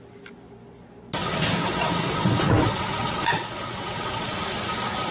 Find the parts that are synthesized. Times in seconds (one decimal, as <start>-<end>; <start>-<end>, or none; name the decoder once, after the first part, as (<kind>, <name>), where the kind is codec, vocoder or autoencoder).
1.2-4.3 (vocoder, WaveNeXt)